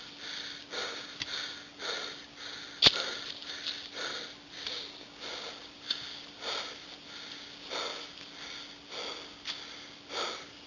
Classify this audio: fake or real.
real